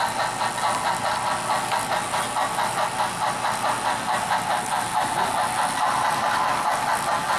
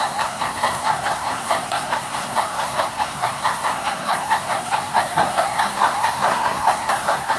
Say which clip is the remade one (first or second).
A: second